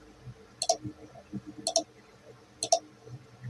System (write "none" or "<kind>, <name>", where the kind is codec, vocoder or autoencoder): none